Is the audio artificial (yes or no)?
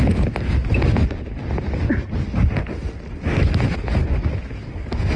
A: yes